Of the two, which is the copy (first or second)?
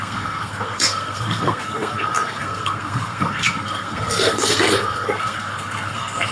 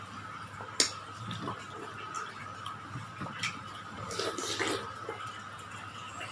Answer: first